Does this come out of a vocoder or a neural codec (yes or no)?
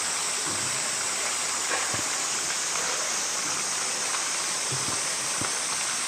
no